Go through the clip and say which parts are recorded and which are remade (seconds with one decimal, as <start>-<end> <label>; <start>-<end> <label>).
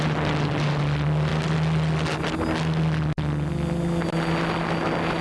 0.0-5.2 recorded